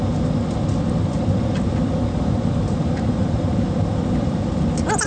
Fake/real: real